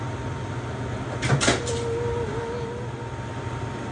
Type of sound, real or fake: real